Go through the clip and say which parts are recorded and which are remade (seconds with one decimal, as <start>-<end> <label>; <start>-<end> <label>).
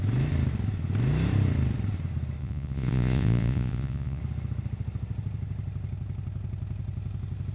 0.0-2.4 recorded; 2.4-4.2 remade; 4.2-7.5 recorded